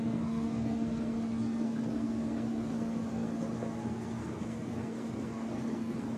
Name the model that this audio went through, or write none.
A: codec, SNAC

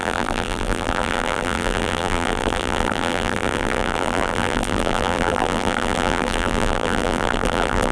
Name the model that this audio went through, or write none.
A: vocoder, BigVGAN v2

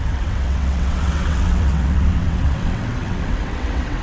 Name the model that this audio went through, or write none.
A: vocoder, WaveNeXt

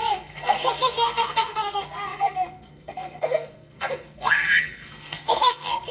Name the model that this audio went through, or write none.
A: codec, SNAC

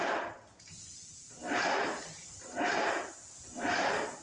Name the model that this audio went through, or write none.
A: vocoder, BigVGAN v2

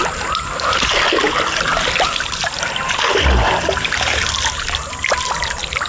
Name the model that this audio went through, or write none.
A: none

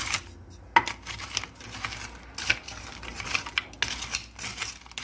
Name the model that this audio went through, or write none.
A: none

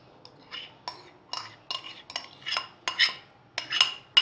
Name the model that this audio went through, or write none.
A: none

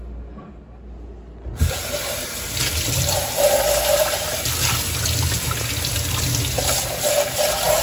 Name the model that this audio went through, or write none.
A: none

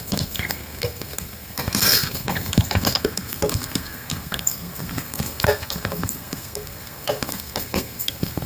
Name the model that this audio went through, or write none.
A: codec, SNAC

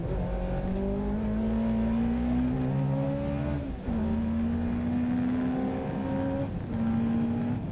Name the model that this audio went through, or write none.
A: none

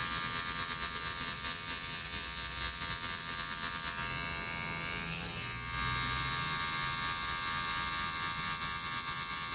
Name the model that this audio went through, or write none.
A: none